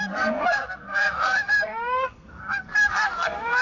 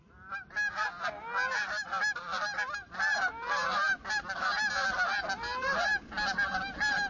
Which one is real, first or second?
second